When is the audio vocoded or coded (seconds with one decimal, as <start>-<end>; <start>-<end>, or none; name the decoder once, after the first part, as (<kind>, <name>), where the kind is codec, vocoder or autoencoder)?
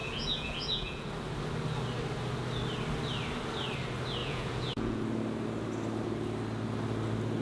0.0-1.1 (vocoder, Vocos); 4.2-5.0